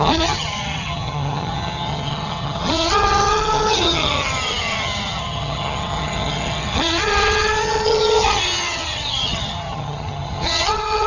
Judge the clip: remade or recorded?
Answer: remade